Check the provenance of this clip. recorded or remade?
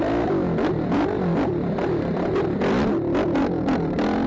recorded